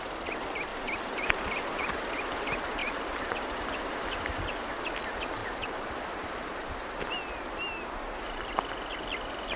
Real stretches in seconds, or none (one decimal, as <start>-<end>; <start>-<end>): 0.0-0.7; 1.6-2.8; 3.6-5.4; 6.9-9.6